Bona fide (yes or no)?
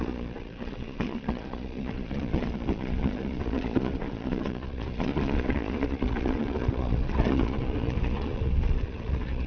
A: no